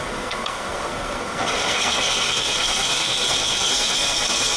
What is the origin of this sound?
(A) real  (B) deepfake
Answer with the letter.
B